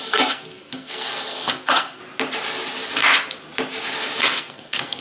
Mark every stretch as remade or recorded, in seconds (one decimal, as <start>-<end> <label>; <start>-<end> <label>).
0.0-2.0 remade; 2.0-4.2 recorded; 4.2-5.0 remade